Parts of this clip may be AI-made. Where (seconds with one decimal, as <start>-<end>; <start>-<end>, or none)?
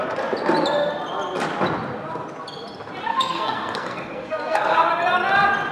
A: 3.1-4.9